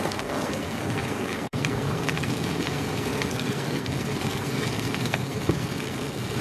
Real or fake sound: fake